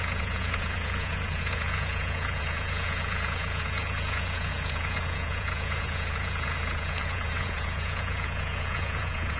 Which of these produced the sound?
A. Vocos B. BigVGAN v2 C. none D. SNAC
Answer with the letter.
A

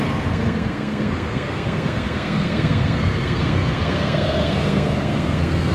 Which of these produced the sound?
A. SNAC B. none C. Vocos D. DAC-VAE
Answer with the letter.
A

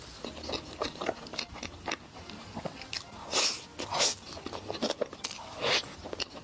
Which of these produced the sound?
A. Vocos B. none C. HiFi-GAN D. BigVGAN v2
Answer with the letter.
B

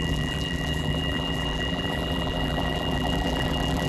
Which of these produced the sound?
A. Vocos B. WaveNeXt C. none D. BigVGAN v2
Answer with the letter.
D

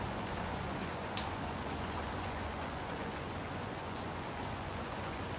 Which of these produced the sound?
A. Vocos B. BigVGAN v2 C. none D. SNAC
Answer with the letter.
A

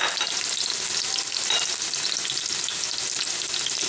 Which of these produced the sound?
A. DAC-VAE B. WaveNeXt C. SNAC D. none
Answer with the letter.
D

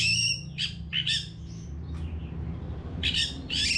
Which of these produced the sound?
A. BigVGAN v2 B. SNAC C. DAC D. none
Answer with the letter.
D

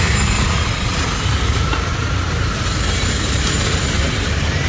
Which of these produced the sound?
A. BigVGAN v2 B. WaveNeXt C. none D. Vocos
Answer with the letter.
A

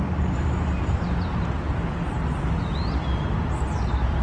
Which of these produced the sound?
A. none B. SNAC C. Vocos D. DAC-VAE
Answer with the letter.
A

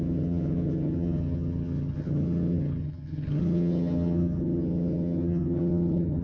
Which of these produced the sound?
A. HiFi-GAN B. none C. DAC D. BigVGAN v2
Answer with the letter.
A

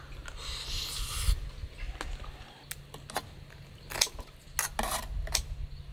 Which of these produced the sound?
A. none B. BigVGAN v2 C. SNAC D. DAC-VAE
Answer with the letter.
A